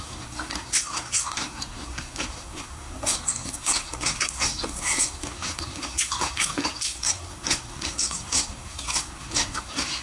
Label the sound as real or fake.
fake